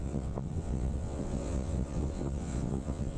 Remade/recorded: remade